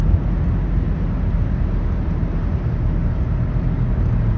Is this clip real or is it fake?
real